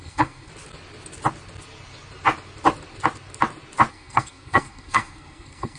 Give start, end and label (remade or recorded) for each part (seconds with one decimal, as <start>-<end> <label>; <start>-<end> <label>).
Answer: 0.0-0.5 remade; 0.5-3.9 recorded; 3.9-5.8 remade